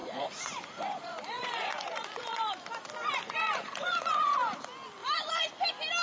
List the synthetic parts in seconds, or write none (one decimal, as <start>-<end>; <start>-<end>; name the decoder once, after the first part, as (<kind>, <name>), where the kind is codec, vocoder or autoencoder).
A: 0.0-2.5 (vocoder, Vocos); 3.0-4.6; 5.0-5.5